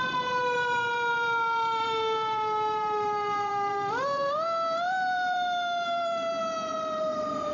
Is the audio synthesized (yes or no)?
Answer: yes